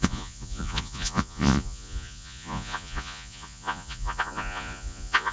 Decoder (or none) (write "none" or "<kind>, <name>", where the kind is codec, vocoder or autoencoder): vocoder, Vocos